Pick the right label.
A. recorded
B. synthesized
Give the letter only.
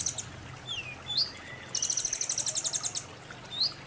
A